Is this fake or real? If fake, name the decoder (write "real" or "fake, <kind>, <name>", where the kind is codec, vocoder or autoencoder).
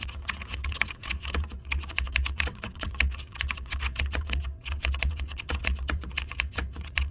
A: fake, vocoder, WaveNeXt